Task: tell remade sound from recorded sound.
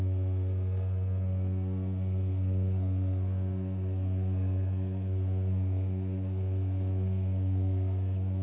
remade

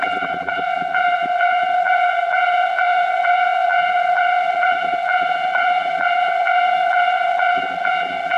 remade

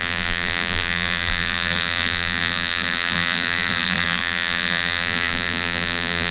remade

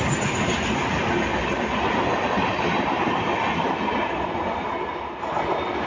recorded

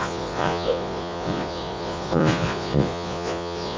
remade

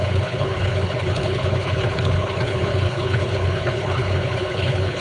remade